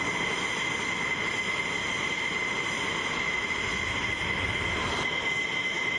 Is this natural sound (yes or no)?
yes